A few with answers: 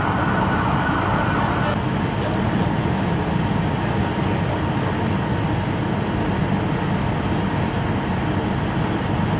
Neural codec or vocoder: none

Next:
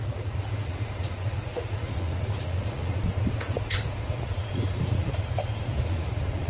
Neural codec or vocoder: vocoder, Vocos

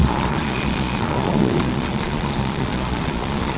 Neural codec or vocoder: vocoder, Vocos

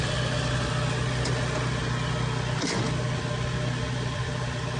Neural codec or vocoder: none